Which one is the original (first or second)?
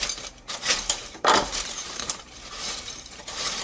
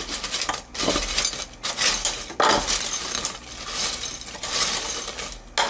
second